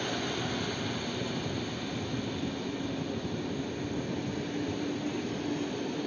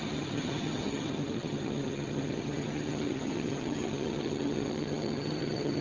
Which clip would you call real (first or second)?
first